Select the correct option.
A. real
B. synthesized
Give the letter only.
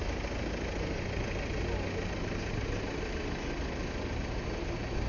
A